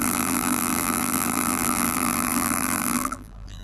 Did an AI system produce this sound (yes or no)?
yes